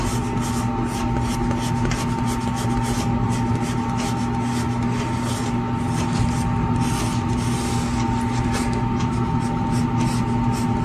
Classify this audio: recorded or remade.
recorded